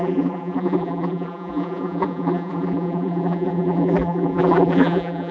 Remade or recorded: remade